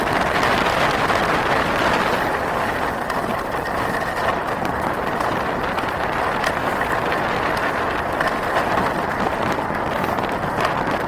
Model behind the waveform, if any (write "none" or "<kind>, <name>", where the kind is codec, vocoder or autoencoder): none